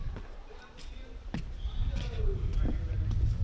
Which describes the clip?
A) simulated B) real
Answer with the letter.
A